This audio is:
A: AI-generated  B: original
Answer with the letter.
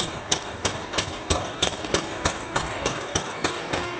A